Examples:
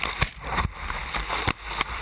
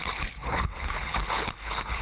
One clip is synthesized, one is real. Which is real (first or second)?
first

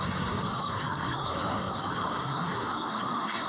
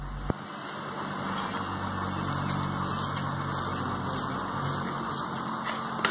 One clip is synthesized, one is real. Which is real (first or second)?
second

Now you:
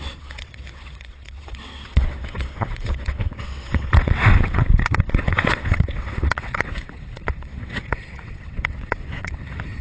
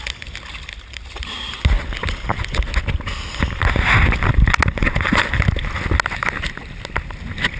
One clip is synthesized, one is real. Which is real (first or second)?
second